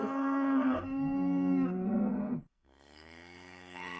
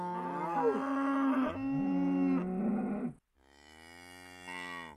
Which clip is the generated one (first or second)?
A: first